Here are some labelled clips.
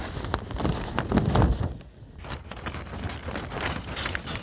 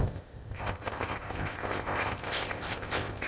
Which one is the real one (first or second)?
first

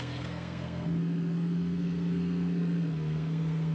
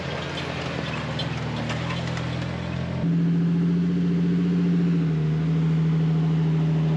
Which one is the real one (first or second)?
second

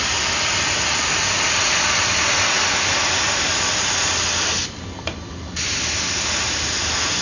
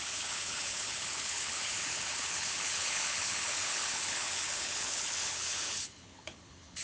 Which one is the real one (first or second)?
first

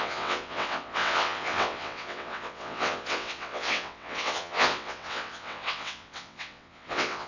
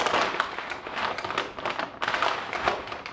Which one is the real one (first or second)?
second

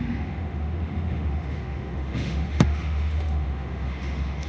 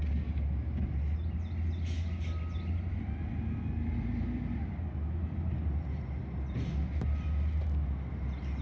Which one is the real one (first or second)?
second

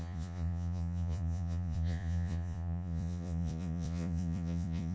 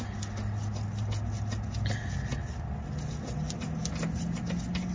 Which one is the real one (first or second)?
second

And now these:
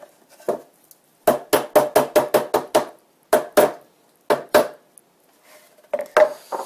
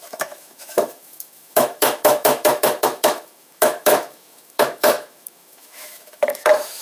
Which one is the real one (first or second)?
first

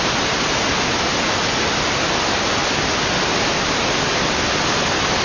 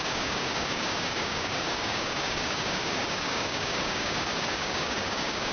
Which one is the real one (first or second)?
first